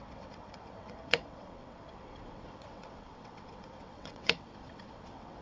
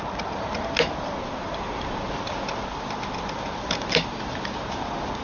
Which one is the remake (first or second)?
first